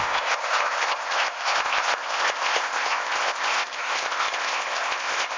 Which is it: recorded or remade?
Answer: remade